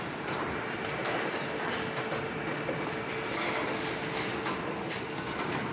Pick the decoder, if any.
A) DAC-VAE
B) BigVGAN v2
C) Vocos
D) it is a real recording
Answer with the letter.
D